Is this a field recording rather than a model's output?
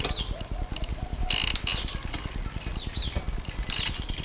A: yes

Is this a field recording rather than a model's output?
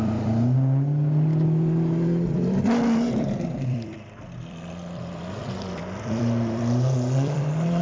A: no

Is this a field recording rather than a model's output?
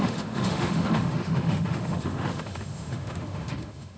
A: no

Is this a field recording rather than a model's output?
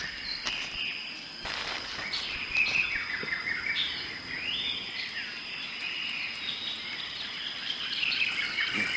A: yes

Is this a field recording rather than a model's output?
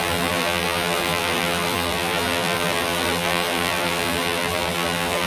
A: no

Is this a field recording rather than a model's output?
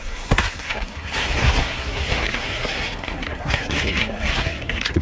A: no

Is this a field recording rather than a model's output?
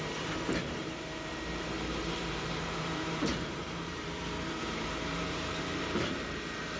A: no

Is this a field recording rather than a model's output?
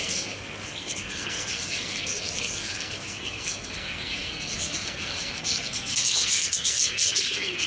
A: no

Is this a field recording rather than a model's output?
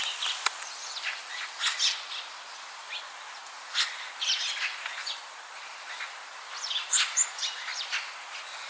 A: no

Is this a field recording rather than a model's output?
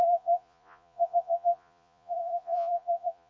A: no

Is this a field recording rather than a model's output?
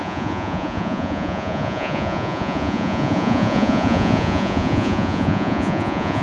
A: no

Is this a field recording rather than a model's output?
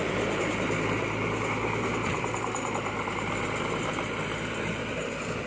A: no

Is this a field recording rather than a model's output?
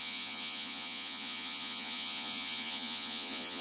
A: no